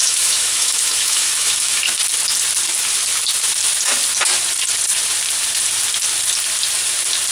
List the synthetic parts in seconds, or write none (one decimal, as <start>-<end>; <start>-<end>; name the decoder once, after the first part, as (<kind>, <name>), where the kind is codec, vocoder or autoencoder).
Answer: 0.0-1.8 (autoencoder, DAC-VAE)